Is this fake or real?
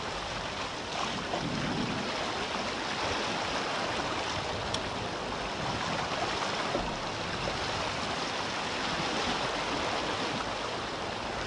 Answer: real